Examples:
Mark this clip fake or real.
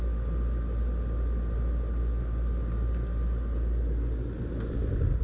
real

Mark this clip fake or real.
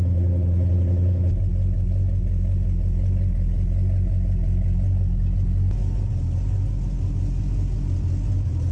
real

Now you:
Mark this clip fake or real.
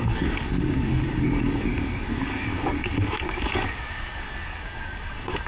fake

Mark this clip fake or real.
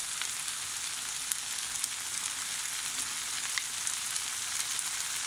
real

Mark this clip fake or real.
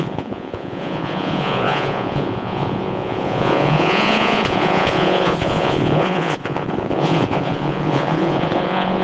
fake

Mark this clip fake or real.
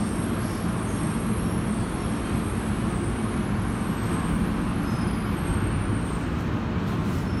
real